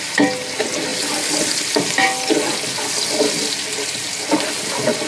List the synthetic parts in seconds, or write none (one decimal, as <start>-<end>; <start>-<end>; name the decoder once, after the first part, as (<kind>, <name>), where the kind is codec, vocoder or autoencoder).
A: none